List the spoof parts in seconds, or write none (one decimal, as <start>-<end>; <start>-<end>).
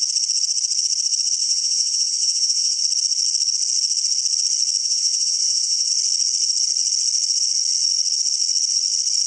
1.4-2.8; 4.8-5.9